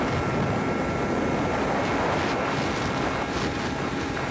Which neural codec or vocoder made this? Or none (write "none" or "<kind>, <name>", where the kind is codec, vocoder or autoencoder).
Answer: none